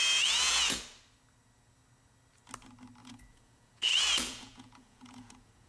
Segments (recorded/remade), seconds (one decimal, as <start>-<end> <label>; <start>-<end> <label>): 0.0-0.8 remade; 0.8-3.0 recorded; 3.0-5.7 remade